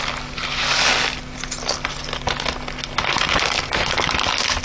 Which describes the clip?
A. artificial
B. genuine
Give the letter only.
B